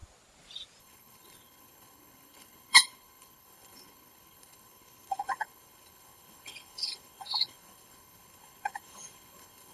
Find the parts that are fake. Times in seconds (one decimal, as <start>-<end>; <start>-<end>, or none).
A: 0.8-9.7